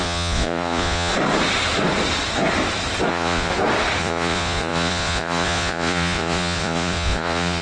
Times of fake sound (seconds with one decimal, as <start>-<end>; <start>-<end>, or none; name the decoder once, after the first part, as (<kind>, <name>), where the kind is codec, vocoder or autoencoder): 0.0-1.1 (vocoder, Vocos); 3.1-3.5; 4.0-7.6